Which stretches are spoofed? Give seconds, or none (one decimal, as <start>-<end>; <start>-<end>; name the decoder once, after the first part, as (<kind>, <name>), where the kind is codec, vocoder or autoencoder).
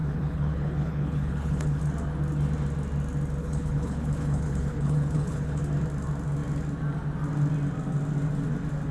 0.0-1.8 (codec, HILCodec); 3.4-5.6